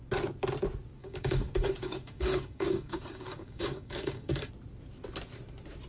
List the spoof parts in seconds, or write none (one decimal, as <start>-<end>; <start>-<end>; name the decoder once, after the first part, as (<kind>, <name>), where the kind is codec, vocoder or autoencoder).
1.0-4.5 (codec, DAC)